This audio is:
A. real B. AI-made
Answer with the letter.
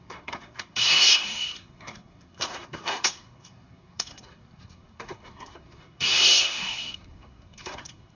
B